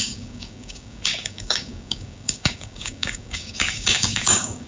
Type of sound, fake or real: fake